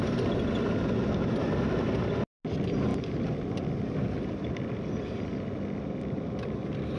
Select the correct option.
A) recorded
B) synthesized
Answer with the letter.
A